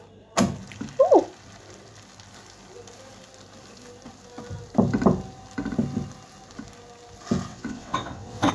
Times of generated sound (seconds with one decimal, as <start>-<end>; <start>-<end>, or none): 7.5-8.5